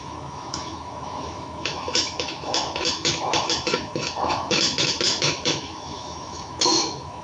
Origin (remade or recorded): remade